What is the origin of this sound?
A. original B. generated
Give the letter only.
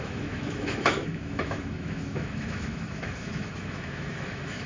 B